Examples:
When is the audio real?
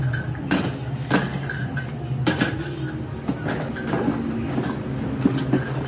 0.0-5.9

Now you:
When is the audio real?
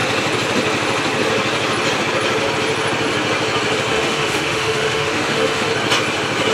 0.0-3.9; 5.7-6.5